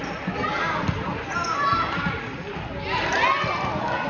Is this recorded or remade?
recorded